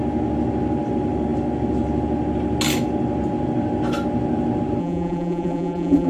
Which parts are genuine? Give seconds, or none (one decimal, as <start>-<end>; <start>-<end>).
0.0-4.8